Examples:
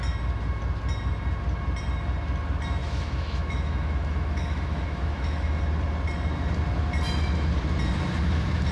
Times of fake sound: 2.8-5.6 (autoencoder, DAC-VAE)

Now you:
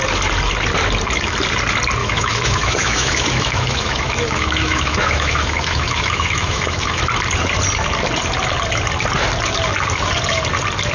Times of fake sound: 2.0-7.0 (autoencoder, DAC-VAE)